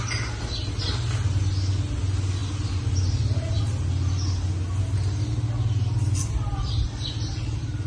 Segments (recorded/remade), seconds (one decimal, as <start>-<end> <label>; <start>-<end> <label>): 0.0-7.9 recorded